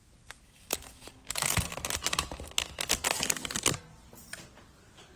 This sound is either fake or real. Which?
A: real